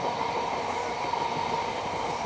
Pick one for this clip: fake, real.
real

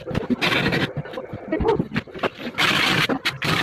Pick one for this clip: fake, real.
real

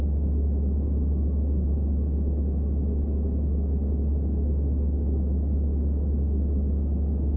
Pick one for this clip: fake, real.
real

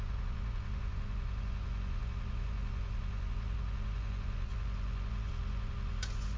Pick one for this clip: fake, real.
fake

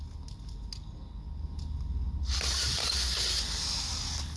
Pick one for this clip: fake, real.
real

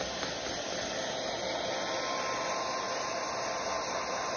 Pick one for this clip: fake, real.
real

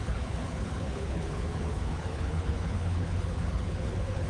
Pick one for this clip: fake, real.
fake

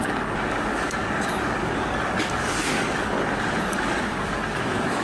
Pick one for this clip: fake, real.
fake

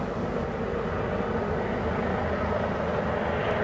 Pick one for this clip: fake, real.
real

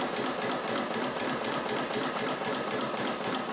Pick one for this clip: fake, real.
real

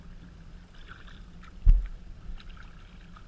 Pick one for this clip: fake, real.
real